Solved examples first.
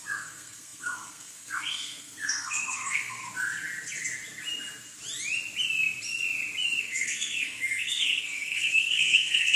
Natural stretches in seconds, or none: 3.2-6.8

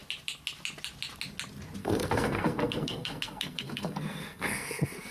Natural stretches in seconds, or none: 0.0-1.8

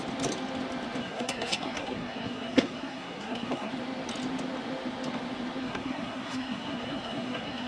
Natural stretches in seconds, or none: 0.0-1.0; 3.7-5.6

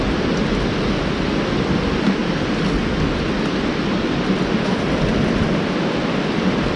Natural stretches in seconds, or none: 0.0-6.8